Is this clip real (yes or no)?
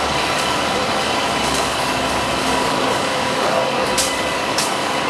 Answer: no